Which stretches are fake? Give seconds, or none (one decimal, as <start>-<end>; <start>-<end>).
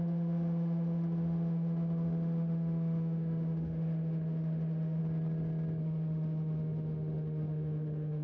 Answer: 0.0-5.0; 5.8-8.2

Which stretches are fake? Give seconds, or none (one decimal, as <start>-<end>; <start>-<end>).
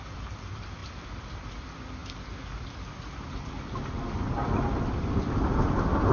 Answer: none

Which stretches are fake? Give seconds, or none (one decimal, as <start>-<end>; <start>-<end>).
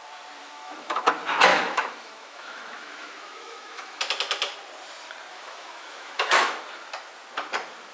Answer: 0.4-1.0; 1.5-4.0; 5.3-6.6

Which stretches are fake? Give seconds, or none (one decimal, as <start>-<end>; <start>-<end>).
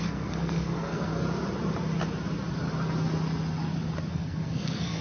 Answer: 0.0-1.1; 4.1-5.0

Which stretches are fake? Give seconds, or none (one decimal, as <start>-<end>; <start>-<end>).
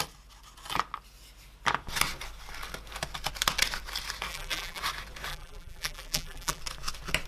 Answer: 4.3-4.8; 5.3-6.6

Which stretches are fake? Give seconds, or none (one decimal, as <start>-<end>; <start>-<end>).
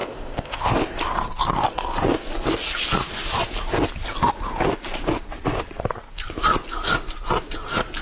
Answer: 0.0-0.7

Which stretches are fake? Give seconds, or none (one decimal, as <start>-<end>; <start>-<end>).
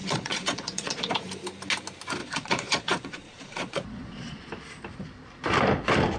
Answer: 0.0-1.1; 2.2-4.4